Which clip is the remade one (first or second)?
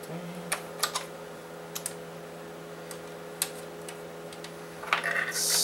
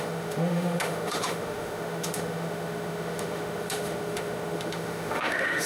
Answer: second